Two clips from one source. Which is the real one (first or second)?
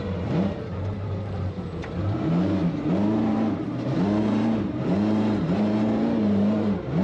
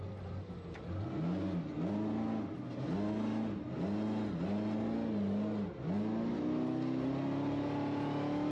second